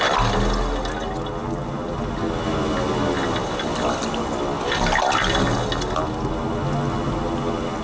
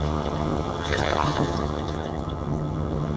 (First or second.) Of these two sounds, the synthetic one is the second